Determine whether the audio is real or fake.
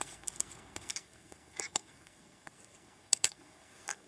fake